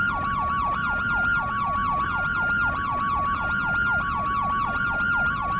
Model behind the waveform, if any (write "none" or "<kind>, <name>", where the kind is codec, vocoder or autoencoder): none